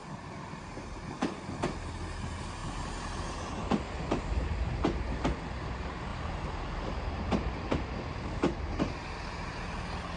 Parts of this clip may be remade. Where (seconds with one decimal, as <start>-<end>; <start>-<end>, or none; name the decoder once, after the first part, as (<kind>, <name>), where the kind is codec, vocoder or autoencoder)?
none